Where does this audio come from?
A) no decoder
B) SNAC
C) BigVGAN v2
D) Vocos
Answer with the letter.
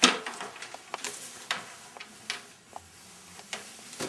A